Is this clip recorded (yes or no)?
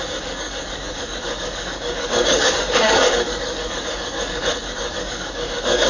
no